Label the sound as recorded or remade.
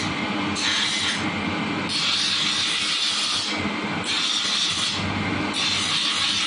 recorded